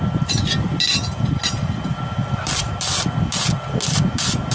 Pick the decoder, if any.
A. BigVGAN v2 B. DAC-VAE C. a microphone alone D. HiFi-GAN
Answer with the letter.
C